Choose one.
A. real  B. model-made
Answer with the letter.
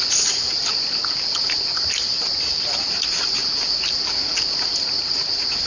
A